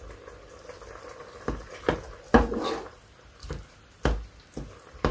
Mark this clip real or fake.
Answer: real